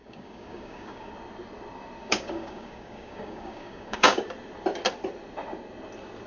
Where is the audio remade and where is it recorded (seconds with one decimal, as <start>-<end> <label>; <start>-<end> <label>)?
0.0-1.1 remade; 1.1-2.0 recorded; 2.0-4.2 remade; 4.2-6.3 recorded